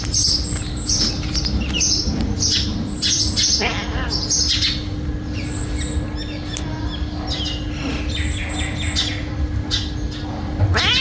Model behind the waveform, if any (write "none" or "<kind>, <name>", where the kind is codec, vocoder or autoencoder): none